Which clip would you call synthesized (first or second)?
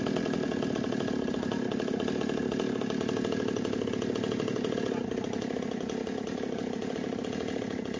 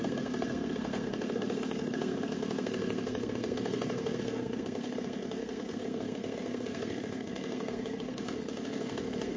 second